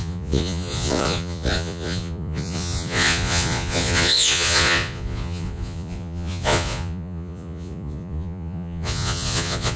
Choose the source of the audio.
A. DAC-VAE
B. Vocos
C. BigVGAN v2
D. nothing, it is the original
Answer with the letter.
B